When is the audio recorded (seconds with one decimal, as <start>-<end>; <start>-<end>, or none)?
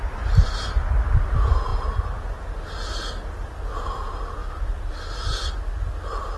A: 0.0-6.4